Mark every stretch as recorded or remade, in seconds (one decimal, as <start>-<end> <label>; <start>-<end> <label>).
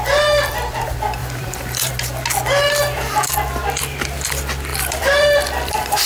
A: 0.0-1.2 recorded; 1.2-1.9 remade; 1.9-4.7 recorded; 4.7-6.1 remade